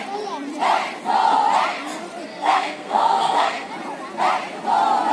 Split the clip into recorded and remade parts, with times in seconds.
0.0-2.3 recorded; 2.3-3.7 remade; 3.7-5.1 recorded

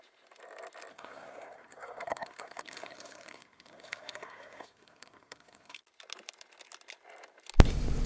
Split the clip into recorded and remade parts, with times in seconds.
0.0-0.9 recorded; 0.9-5.8 remade; 5.8-8.1 recorded

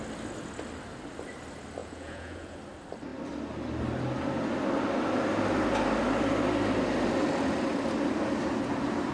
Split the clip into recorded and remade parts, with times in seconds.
0.0-1.8 recorded; 1.8-2.6 remade; 2.6-9.1 recorded

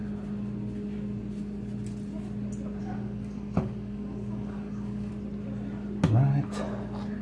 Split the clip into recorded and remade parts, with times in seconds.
0.0-2.8 recorded; 2.8-5.1 remade; 5.1-7.2 recorded

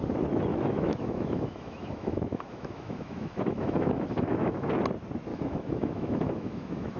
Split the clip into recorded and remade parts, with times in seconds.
0.0-0.5 recorded; 0.5-4.7 remade; 4.7-5.3 recorded; 5.3-7.0 remade

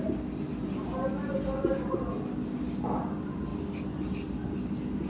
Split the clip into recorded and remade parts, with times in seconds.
0.0-5.1 recorded